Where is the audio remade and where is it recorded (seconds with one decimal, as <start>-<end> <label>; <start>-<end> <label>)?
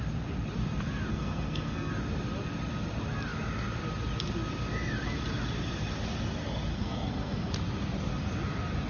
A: 0.0-1.1 recorded; 1.1-1.9 remade; 1.9-6.7 recorded; 6.7-7.5 remade; 7.5-8.9 recorded